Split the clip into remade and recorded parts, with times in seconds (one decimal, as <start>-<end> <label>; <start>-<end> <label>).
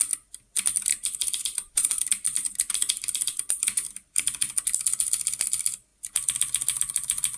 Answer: 0.0-0.9 recorded; 0.9-3.5 remade; 3.5-7.4 recorded